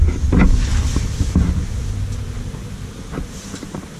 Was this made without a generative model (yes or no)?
yes